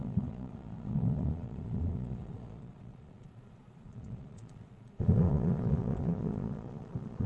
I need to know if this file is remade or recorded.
remade